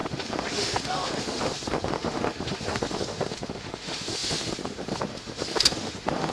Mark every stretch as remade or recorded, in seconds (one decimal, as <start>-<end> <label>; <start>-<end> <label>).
0.0-6.3 remade